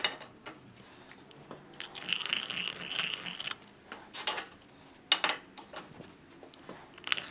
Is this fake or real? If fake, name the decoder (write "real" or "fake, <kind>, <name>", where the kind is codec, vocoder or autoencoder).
real